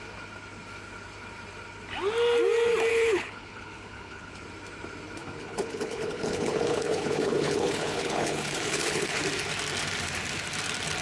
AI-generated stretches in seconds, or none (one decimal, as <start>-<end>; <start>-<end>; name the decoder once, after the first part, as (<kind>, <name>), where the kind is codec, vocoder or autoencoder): 2.9-4.4 (codec, HILCodec); 5.2-9.2